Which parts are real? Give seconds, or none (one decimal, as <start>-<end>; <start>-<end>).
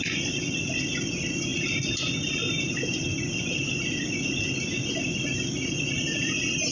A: 0.0-6.7